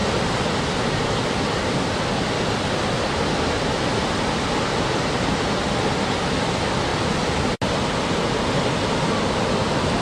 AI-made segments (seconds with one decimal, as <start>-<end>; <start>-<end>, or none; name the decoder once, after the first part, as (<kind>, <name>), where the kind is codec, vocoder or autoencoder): none